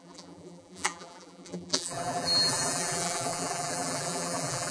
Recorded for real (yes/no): no